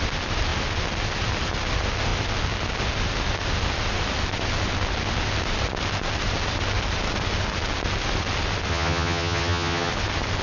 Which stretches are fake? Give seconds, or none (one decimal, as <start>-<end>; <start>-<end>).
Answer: 8.7-9.9